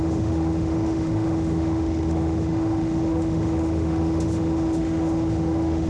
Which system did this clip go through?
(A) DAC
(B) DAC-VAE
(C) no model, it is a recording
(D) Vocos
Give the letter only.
B